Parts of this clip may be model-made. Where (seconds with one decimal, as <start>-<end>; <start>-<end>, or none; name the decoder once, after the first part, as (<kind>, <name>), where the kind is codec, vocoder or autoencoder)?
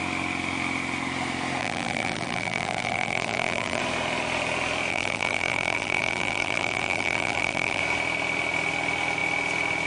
1.6-3.8 (vocoder, BigVGAN v2); 4.9-7.8